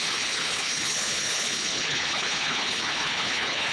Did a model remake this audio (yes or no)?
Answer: yes